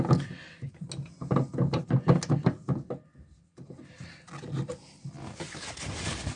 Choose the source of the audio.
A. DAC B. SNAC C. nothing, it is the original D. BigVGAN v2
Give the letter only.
C